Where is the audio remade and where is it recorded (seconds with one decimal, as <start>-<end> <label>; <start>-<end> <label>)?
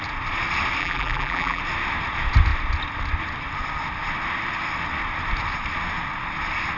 0.0-0.8 recorded; 0.8-1.6 remade; 1.6-6.8 recorded